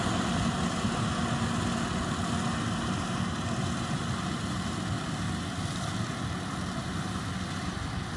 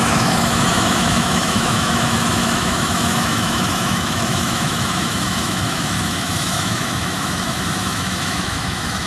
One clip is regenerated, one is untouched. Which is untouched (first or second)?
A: first